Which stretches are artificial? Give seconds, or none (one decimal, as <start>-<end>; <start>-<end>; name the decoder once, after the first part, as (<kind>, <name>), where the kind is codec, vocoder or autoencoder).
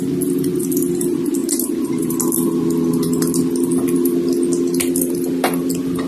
none